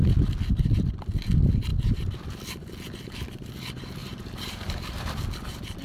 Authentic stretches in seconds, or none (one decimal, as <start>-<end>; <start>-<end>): 0.0-4.0; 5.1-5.8